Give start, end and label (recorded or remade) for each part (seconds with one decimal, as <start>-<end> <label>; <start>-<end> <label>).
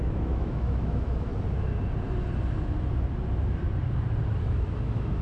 0.0-1.3 remade; 1.3-4.4 recorded; 4.4-5.2 remade